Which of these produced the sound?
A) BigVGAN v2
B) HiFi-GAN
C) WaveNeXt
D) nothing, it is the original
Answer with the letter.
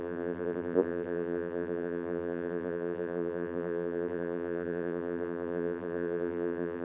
A